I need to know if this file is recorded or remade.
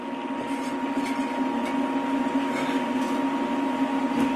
recorded